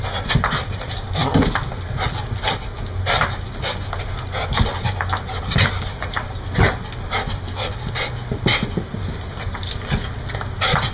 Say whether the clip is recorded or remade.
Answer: recorded